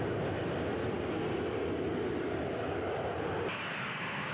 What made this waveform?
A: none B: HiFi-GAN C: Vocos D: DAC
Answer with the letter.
A